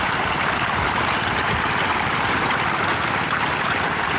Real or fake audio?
real